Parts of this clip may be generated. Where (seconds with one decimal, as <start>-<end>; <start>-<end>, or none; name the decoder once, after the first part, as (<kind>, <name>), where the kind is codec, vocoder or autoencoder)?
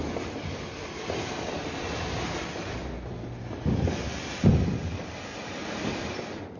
5.3-6.0 (vocoder, BigVGAN v2)